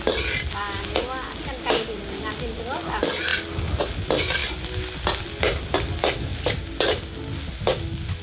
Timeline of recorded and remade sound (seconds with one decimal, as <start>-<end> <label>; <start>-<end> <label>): 0.0-8.2 recorded